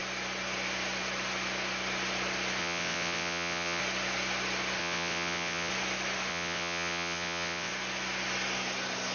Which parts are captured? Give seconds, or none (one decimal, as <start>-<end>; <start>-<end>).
0.0-2.6; 3.8-4.8; 5.7-6.3; 7.7-9.1